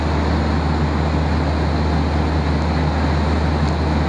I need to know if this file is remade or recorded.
recorded